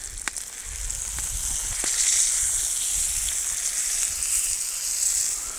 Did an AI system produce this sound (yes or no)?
no